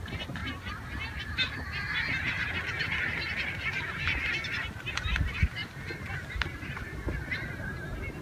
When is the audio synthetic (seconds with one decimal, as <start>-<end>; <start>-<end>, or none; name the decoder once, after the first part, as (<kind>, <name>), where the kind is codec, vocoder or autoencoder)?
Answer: 0.0-0.4 (vocoder, BigVGAN v2); 3.8-8.2